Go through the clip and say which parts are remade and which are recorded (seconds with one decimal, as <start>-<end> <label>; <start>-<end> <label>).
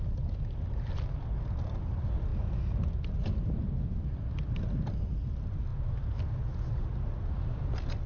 0.0-8.1 recorded